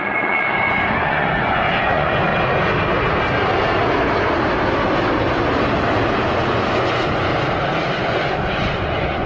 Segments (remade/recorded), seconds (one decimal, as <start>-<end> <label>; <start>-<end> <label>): 0.0-2.3 remade; 2.3-6.7 recorded; 6.7-7.3 remade; 7.3-8.0 recorded; 8.0-9.3 remade